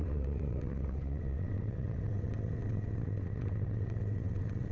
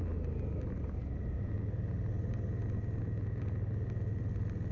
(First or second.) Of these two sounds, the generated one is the first